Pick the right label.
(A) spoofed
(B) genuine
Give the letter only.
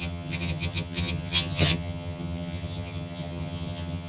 A